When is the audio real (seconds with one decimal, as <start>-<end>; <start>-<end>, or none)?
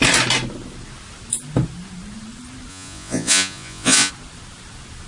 0.0-2.7; 4.1-5.1